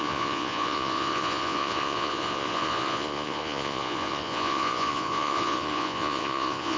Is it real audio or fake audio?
fake